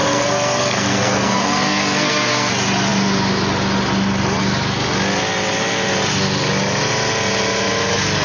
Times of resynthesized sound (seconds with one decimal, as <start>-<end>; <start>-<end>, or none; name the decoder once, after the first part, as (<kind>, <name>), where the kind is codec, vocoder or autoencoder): 0.0-2.5 (codec, SNAC)